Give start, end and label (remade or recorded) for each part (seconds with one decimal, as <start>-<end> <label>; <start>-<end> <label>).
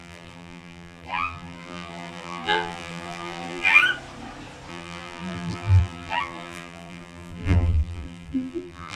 0.0-3.8 remade; 3.8-4.7 recorded; 4.7-9.0 remade